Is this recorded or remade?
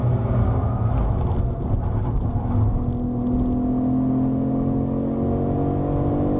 recorded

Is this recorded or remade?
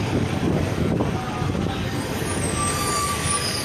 remade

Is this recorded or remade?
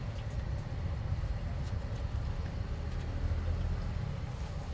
recorded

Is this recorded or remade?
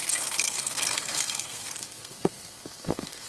remade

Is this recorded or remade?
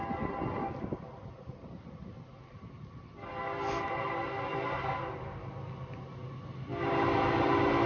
recorded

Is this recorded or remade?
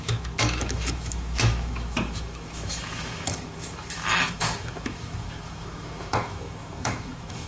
remade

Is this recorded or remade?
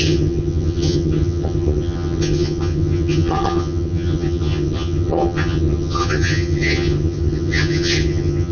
remade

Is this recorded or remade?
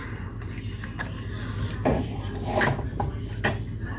recorded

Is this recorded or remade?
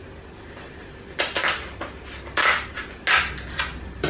recorded